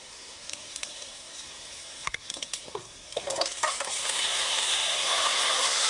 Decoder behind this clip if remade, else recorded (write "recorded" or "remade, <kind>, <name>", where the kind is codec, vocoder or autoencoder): remade, codec, SNAC